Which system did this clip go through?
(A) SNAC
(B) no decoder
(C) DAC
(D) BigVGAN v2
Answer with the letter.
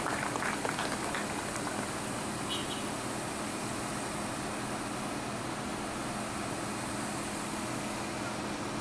B